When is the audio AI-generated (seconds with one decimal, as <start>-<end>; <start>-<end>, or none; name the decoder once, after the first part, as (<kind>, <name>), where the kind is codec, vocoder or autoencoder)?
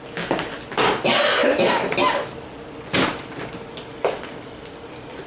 none